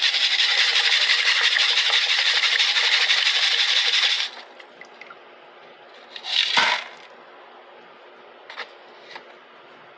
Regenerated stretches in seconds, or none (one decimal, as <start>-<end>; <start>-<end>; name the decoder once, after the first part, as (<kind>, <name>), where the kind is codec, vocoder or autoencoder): none